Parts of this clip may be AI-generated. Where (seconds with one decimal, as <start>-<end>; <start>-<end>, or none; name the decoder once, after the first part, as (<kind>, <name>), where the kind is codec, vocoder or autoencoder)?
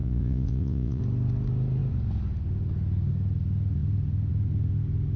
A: 0.0-1.0 (vocoder, Vocos)